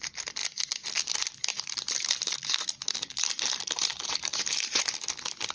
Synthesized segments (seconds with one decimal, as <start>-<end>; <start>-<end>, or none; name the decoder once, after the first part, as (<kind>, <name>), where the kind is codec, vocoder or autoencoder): 1.5-4.8 (vocoder, BigVGAN v2)